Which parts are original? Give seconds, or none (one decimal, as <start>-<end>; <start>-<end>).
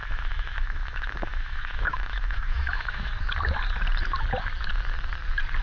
3.2-5.6